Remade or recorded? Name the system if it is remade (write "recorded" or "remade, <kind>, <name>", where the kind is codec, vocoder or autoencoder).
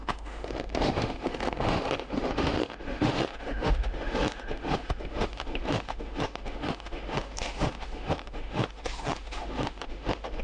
remade, autoencoder, DAC-VAE